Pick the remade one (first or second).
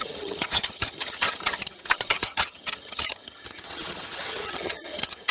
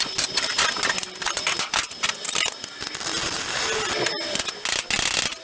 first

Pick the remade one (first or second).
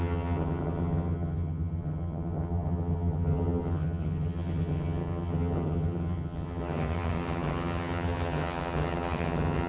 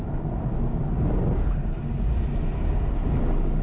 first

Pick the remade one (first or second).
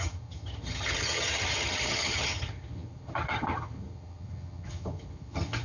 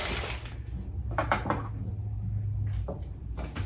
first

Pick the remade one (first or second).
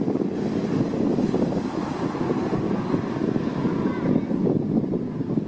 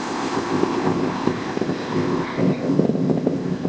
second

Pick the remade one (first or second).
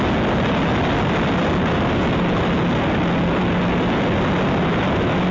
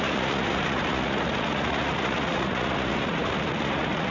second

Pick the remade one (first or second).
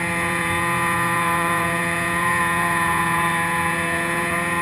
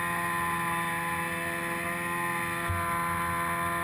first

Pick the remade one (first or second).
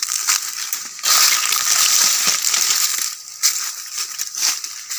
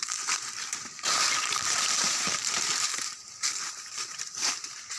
second